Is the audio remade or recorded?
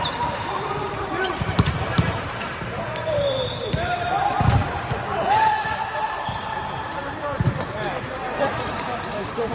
remade